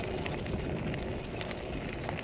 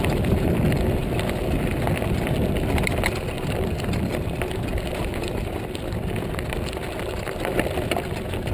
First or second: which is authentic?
first